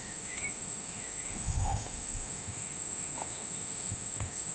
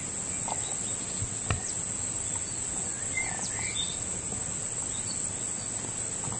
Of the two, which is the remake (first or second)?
first